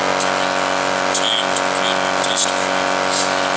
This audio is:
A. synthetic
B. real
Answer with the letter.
B